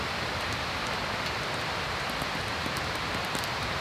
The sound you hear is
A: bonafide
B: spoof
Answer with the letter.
A